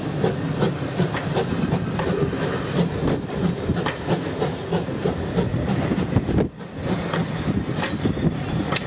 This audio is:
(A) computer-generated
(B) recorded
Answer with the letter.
B